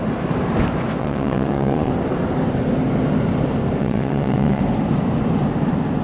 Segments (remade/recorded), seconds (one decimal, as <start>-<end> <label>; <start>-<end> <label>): 0.0-1.0 recorded; 1.0-1.9 remade; 1.9-3.8 recorded; 3.8-4.6 remade; 4.6-6.0 recorded